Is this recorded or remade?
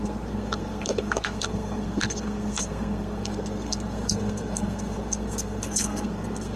remade